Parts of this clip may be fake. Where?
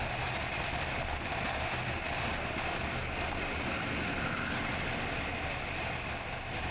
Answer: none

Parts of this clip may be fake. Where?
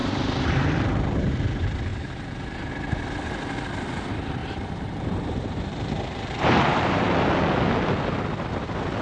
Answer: 0.0-1.3 (vocoder, BigVGAN v2); 1.9-2.7; 4.4-7.0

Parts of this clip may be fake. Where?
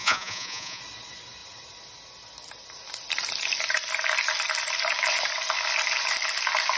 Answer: 0.0-0.8 (vocoder, Vocos)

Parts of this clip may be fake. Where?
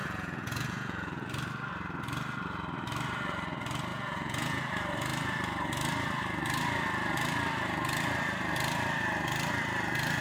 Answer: 0.0-1.3 (vocoder, Vocos); 3.9-4.6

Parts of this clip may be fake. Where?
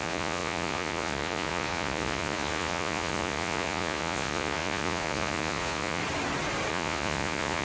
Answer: 0.0-6.0 (vocoder, Vocos); 6.7-7.6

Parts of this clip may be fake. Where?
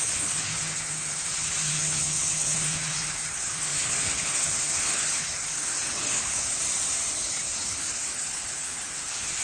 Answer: 0.0-6.6 (codec, HILCodec); 7.1-9.4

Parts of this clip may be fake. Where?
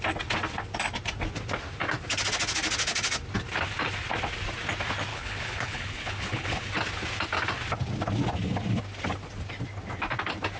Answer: 5.1-6.7 (codec, HILCodec)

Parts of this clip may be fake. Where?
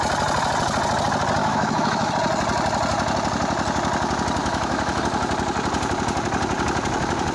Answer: 1.4-2.1 (autoencoder, DAC-VAE); 4.4-5.0